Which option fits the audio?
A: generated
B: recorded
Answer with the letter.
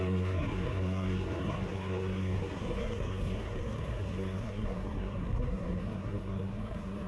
A